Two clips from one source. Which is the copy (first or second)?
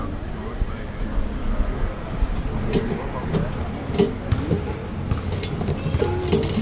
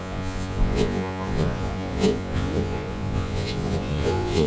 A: second